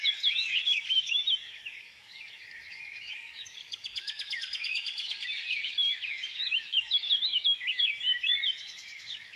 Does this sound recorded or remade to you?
remade